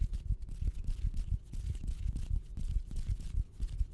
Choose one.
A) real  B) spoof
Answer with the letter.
B